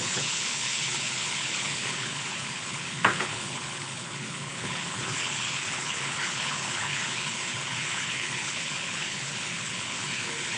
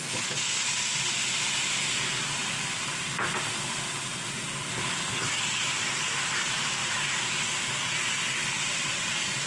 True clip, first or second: second